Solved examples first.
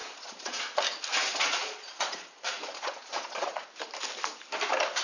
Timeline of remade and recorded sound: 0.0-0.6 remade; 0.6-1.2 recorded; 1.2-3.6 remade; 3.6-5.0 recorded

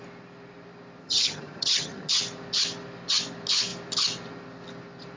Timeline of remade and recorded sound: 0.0-1.0 recorded; 1.0-2.1 remade; 2.1-5.2 recorded

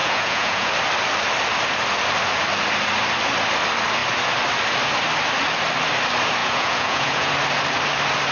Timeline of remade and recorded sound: 0.0-0.7 remade; 0.7-6.4 recorded; 6.4-7.3 remade; 7.3-8.3 recorded